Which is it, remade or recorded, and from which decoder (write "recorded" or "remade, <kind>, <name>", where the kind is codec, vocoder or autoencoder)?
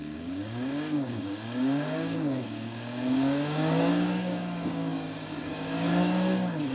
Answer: remade, codec, DAC